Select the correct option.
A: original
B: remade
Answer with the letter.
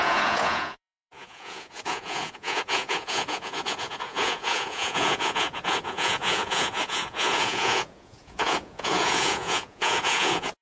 B